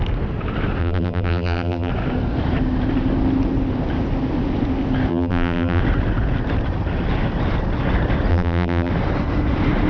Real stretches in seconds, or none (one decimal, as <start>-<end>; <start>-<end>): 0.0-0.8; 1.9-5.1; 5.8-8.3; 8.9-9.9